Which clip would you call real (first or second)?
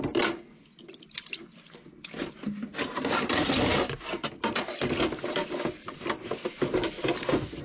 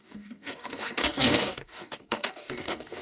first